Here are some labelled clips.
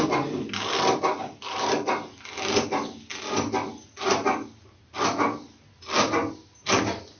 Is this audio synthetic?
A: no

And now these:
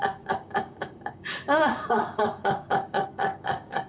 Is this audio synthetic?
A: yes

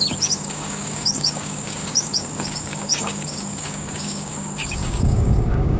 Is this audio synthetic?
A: yes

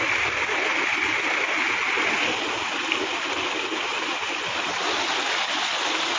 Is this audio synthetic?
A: no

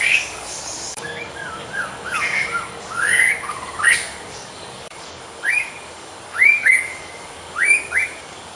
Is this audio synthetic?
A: yes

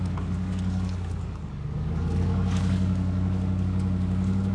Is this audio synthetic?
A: yes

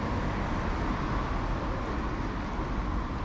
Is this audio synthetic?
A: no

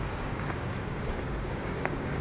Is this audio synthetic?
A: yes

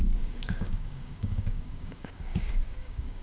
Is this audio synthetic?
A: yes